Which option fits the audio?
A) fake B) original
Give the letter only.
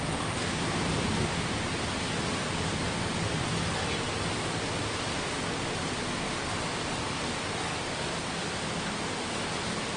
B